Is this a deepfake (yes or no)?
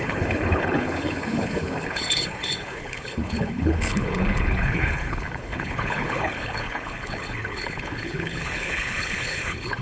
yes